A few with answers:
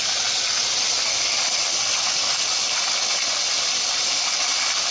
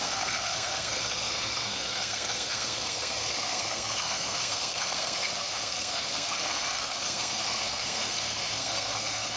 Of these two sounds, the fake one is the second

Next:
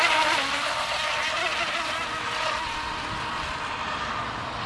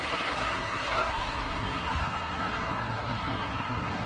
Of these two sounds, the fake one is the second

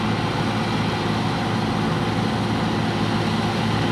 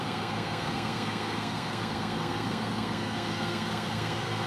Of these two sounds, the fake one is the second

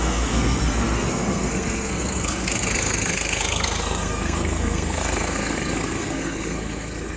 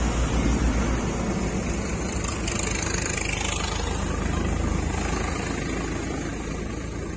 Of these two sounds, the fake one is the first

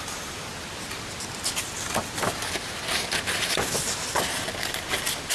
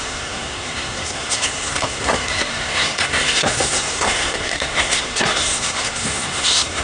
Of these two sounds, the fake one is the second